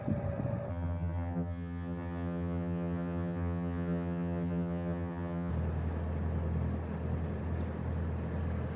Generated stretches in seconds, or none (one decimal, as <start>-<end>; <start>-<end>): 0.7-5.5